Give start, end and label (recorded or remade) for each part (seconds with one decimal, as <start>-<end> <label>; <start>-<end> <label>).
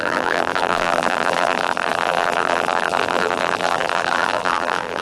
0.0-5.0 remade